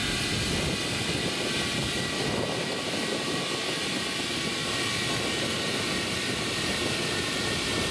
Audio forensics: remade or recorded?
recorded